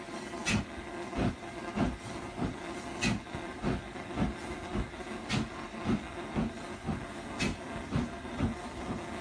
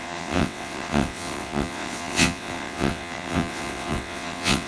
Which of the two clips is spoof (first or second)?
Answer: second